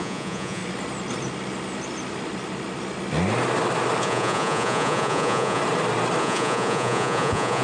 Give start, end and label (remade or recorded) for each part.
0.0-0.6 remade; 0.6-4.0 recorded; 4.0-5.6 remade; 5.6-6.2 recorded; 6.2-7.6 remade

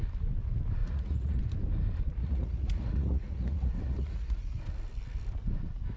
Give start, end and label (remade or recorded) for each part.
0.0-0.8 recorded; 0.8-1.4 remade; 1.4-2.2 recorded; 2.2-4.6 remade; 4.6-6.0 recorded

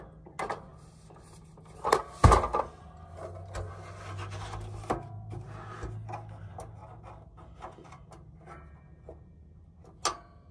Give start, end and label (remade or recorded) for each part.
0.0-10.5 recorded

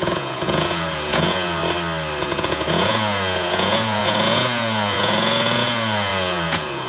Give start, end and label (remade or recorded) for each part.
0.0-1.6 remade; 1.6-2.2 recorded; 2.2-6.9 remade

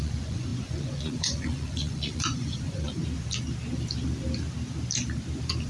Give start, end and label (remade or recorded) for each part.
0.0-3.0 remade; 3.0-5.7 recorded

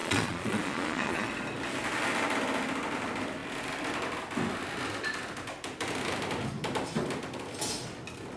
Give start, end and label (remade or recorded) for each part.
0.0-1.3 remade; 1.3-8.4 recorded

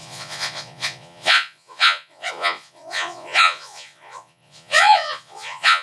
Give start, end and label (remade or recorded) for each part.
0.0-5.8 remade